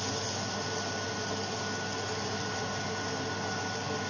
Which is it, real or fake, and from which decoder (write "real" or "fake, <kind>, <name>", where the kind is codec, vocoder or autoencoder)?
real